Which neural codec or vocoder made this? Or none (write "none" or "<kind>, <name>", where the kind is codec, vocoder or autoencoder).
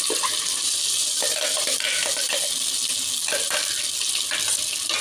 none